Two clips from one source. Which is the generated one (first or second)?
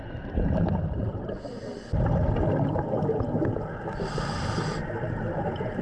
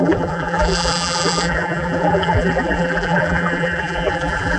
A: second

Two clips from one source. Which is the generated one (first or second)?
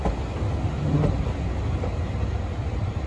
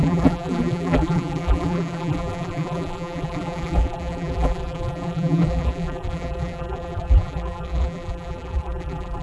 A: second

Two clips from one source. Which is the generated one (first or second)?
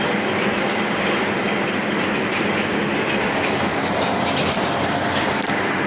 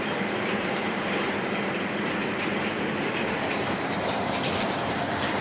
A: second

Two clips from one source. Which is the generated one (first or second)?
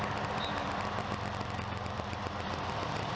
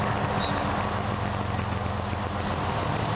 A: first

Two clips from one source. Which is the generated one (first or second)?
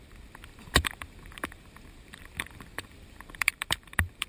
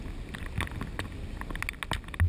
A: first